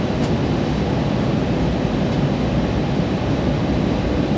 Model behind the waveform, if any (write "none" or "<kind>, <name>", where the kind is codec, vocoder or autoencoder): none